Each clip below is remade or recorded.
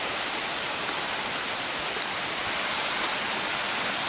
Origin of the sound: recorded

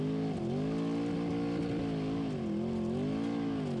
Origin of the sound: recorded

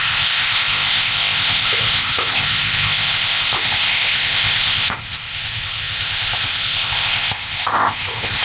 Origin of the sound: remade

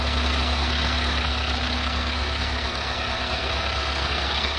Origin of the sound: remade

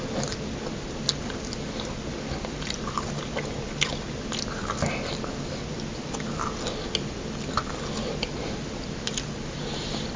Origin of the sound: recorded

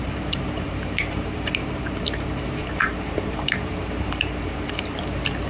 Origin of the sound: remade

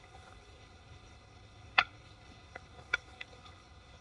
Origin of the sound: remade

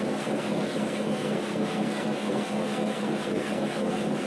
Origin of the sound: remade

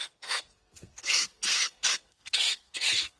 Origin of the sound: remade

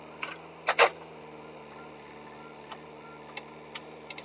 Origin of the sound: recorded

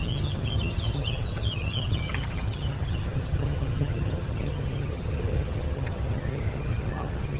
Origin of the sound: remade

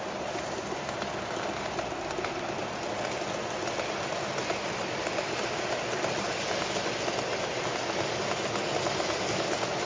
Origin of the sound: recorded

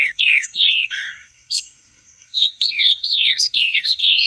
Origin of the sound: remade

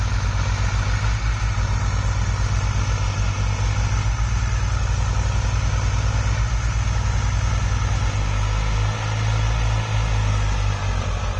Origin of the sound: recorded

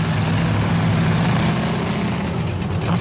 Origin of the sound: recorded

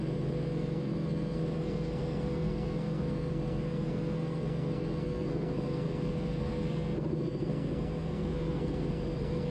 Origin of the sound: remade